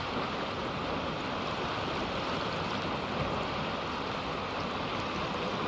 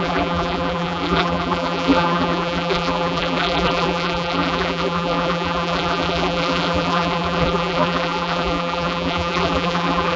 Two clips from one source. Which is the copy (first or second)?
second